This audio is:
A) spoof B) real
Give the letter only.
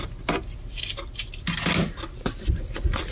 B